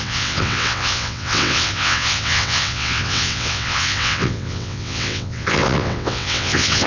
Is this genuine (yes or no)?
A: no